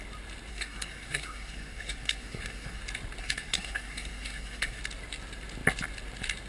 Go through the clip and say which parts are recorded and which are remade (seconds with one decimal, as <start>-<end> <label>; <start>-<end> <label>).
0.0-0.5 recorded; 0.5-2.8 remade; 2.8-3.2 recorded; 3.2-4.8 remade; 4.8-6.5 recorded